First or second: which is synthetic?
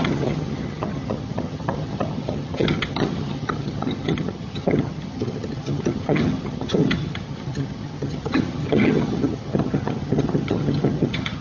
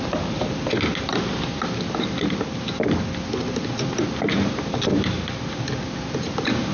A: first